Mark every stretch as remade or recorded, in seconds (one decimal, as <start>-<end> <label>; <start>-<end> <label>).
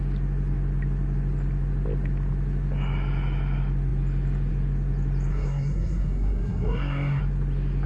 0.0-5.3 recorded; 5.3-7.2 remade; 7.2-7.9 recorded